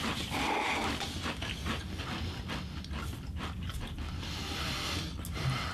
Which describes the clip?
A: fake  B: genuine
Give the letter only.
B